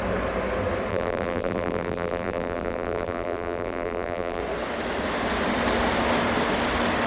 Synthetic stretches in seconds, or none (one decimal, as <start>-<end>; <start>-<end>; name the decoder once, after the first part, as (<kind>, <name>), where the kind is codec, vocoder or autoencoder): 0.9-4.4 (vocoder, BigVGAN v2)